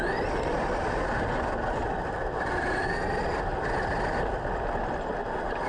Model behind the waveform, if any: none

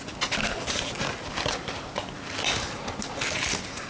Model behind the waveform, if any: none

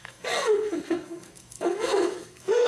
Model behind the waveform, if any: codec, SNAC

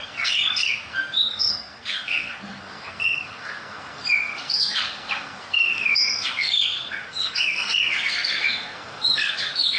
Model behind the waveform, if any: codec, SNAC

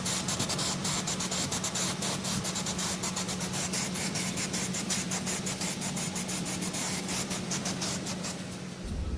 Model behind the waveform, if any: none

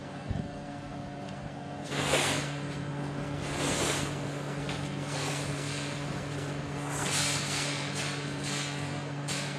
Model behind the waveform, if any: codec, SNAC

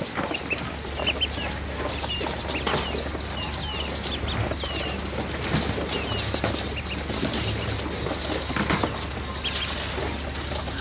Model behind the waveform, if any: none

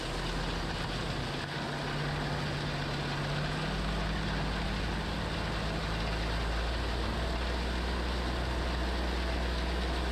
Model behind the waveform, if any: none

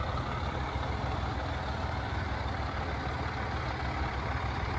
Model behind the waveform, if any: none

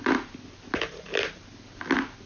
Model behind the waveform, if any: none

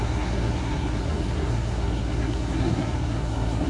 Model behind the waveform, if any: codec, SNAC